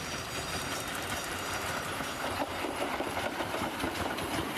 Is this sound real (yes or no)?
no